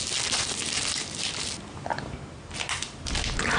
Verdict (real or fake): real